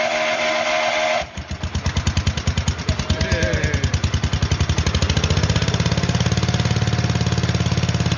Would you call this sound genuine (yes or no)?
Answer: yes